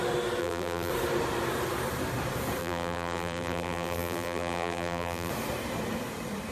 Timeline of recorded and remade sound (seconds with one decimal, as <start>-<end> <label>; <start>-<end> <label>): 0.0-0.4 recorded; 0.4-0.9 remade; 0.9-2.6 recorded; 2.6-5.3 remade; 5.3-6.5 recorded